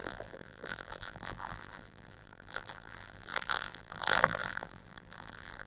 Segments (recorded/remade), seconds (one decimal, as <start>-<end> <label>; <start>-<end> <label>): 0.0-5.7 remade